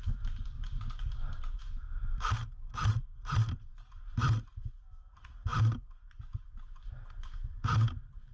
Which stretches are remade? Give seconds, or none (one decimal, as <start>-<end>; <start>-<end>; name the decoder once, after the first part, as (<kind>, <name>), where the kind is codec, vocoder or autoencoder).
none